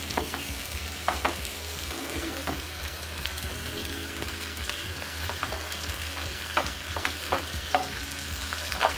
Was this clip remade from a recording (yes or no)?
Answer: yes